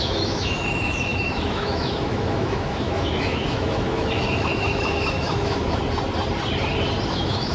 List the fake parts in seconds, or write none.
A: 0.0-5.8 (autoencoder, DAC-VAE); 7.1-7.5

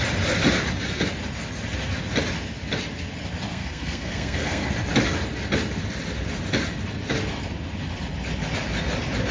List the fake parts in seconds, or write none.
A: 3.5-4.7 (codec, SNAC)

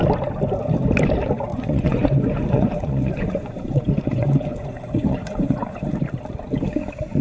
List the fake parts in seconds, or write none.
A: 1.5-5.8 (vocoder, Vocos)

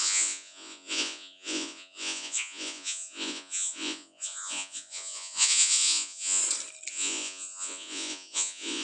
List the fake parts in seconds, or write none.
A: 0.0-6.4 (vocoder, Vocos); 6.9-8.8

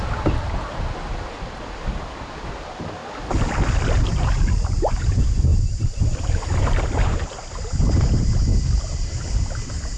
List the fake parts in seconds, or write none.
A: 5.5-6.4 (vocoder, BigVGAN v2)